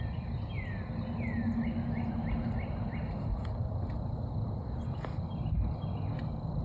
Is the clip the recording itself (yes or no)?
yes